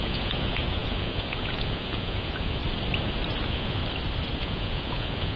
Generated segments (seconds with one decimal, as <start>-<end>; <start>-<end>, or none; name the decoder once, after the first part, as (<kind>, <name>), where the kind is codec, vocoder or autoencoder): 0.0-2.6 (vocoder, Vocos); 3.4-3.8; 4.4-5.4